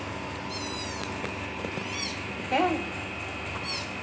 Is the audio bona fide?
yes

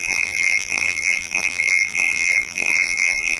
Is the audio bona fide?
no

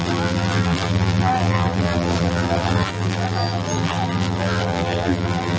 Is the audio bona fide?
no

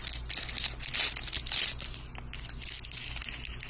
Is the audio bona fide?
yes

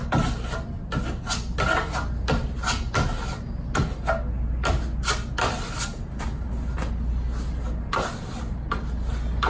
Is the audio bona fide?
yes